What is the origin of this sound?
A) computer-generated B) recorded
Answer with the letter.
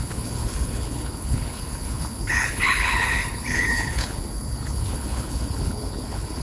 A